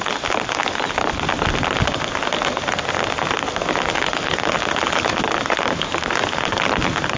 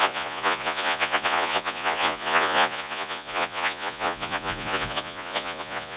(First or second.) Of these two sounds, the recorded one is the first